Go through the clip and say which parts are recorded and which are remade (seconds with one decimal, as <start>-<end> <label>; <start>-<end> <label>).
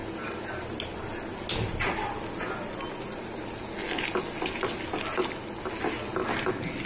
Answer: 0.0-6.9 recorded